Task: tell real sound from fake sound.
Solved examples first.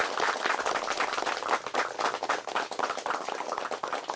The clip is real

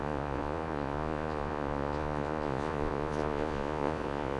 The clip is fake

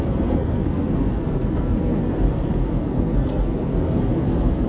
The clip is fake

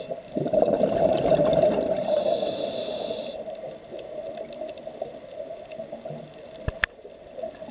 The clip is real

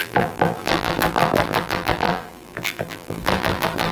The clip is fake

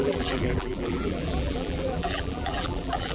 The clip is fake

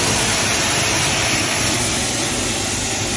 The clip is real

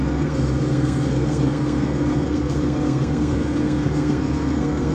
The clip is fake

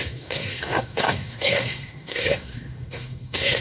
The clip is fake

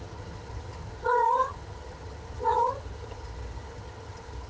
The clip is fake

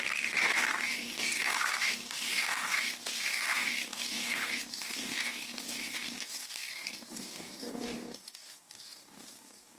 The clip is fake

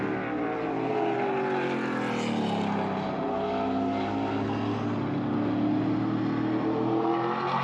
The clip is real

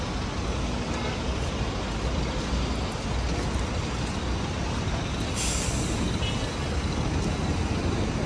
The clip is real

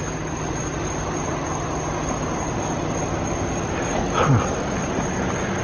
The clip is real